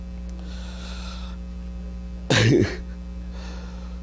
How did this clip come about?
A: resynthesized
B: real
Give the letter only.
B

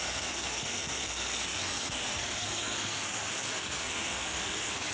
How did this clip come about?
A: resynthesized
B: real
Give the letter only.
A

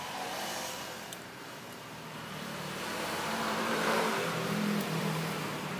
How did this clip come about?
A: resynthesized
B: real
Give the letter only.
A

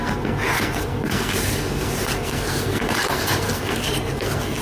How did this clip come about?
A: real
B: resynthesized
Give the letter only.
B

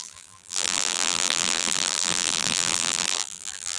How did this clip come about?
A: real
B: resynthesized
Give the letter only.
B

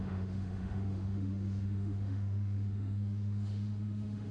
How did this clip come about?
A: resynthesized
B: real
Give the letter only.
A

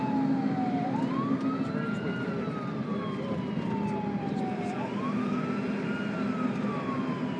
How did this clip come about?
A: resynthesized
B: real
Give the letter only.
B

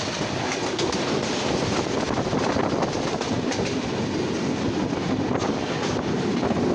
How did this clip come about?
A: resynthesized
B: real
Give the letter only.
B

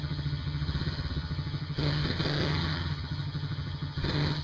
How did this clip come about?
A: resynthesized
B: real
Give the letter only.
A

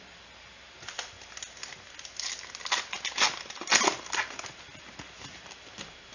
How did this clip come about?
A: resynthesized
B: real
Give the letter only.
B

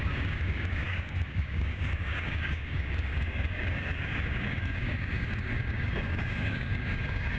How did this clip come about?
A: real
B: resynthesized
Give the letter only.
B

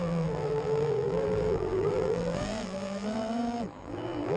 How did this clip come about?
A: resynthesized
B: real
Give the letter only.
A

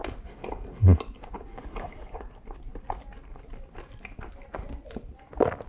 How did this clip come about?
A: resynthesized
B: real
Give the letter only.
B